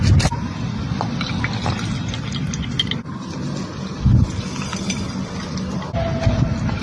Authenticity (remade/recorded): recorded